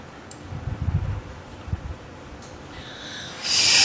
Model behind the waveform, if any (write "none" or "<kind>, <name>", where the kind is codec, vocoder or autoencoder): none